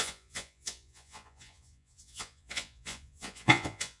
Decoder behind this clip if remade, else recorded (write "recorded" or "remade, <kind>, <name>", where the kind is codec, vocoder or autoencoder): remade, vocoder, Vocos